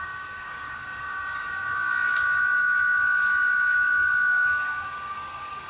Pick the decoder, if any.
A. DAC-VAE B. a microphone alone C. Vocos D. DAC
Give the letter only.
D